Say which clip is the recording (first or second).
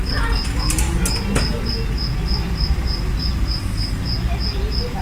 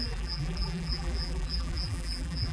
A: first